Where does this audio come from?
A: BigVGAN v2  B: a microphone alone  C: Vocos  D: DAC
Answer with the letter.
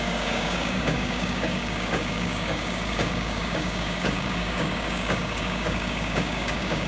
D